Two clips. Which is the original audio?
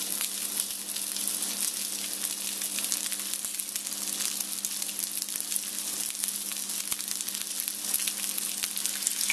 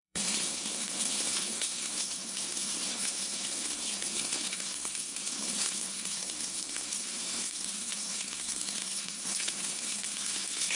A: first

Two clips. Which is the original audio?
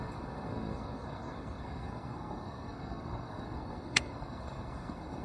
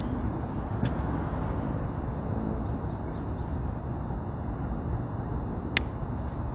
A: second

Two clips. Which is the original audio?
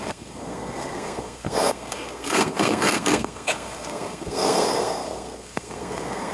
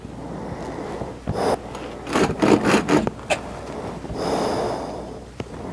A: second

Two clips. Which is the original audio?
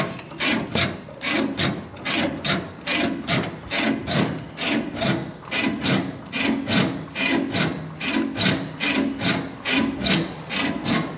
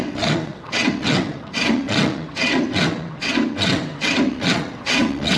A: first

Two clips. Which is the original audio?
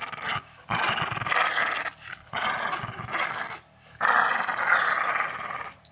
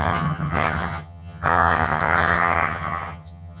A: first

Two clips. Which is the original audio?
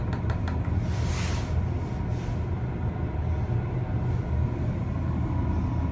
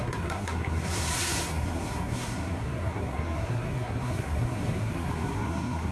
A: first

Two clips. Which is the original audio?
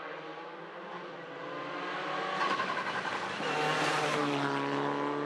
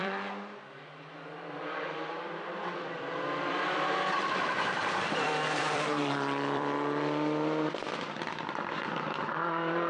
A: first